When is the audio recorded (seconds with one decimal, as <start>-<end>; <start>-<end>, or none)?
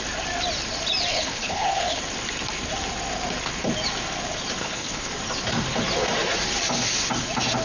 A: 0.0-1.1; 2.0-4.6; 5.1-7.6